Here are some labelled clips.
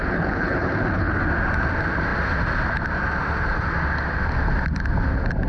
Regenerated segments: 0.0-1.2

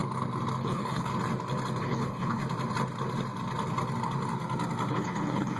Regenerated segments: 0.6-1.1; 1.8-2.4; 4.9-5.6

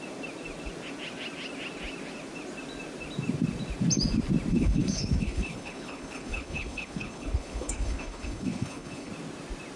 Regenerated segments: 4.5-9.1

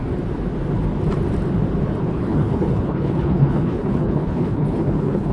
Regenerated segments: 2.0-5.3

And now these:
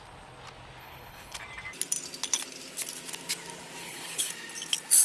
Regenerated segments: 0.8-1.4; 3.8-4.3

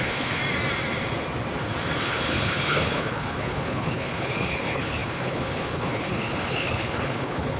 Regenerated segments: 0.0-0.4; 2.0-7.6